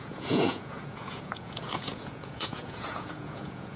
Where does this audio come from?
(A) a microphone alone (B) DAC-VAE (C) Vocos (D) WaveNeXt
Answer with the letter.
C